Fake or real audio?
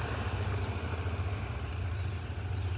real